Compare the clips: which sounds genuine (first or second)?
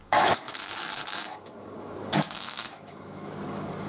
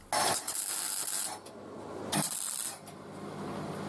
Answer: second